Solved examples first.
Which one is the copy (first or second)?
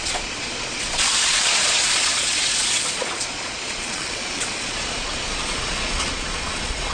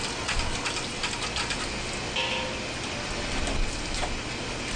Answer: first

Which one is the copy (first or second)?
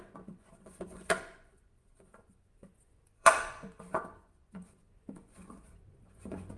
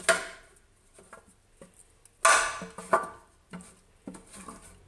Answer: first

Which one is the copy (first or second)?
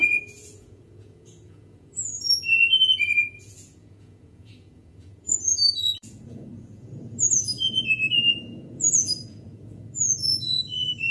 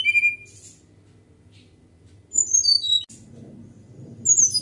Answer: first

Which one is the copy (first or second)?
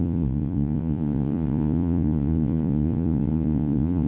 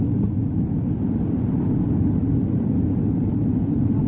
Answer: first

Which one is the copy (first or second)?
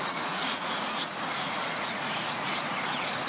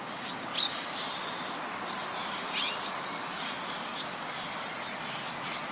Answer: first